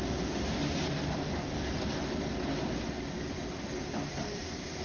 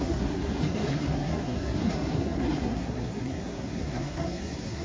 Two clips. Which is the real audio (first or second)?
first